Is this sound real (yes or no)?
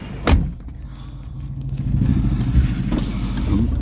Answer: yes